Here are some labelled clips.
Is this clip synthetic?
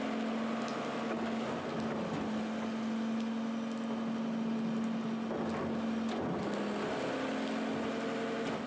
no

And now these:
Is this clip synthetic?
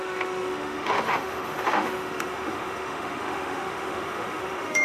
yes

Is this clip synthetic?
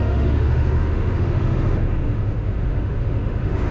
yes